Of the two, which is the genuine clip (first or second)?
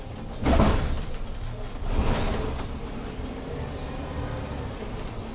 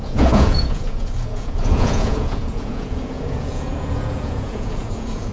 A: first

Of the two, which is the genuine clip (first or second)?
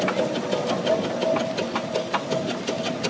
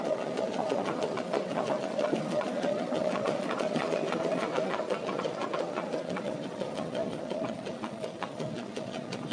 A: first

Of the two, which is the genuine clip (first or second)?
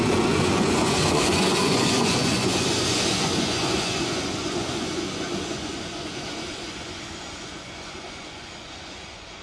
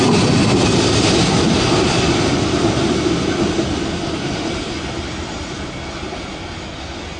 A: second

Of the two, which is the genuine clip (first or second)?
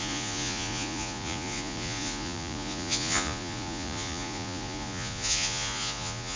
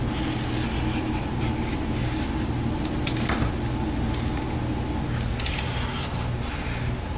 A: second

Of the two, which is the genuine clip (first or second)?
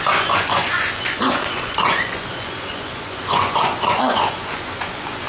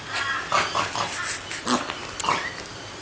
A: second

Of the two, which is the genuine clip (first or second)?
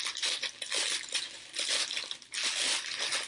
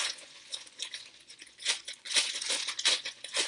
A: first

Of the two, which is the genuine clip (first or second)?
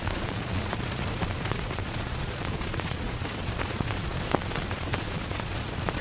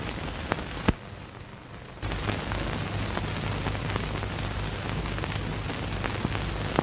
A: second